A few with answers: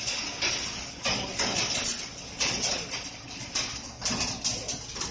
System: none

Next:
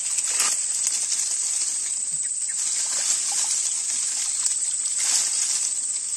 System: none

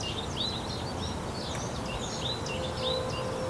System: none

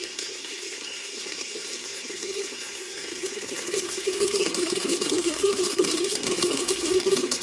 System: codec, SNAC